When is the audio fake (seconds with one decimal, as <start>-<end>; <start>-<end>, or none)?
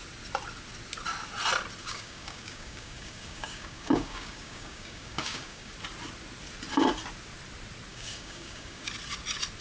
1.8-5.7; 7.9-8.9